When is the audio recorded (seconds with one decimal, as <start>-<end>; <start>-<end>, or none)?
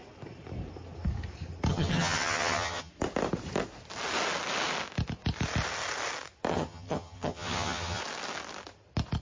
0.0-1.7; 2.9-6.5; 8.0-9.2